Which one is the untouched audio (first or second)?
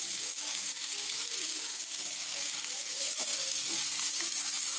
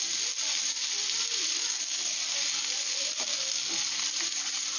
second